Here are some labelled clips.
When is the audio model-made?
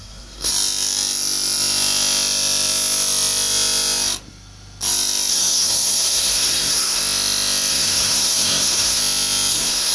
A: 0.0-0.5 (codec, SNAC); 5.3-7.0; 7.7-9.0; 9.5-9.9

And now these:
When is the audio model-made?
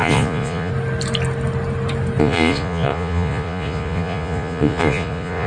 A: 0.0-0.7 (vocoder, Vocos); 2.2-5.5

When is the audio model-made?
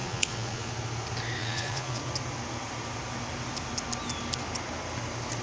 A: 0.0-0.7 (vocoder, Vocos); 1.4-2.0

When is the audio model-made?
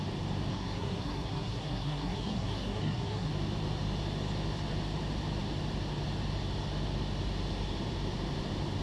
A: 0.5-3.3 (codec, SNAC)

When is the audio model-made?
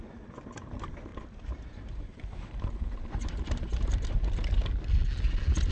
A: 1.1-4.0 (vocoder, BigVGAN v2)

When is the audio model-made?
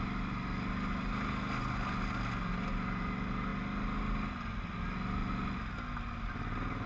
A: none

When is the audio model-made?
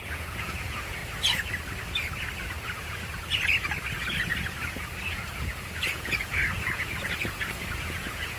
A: 0.0-1.0 (vocoder, Vocos); 5.0-8.4